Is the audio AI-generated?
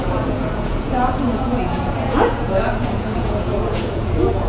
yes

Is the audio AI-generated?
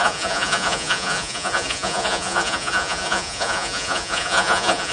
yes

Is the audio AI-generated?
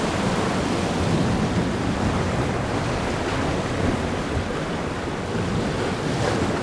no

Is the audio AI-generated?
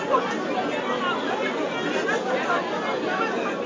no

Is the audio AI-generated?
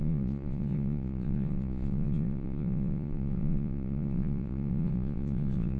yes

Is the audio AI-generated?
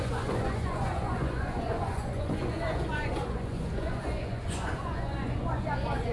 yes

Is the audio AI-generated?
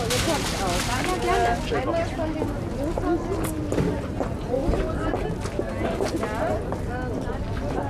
no